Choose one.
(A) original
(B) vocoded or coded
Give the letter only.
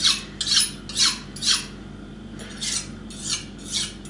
A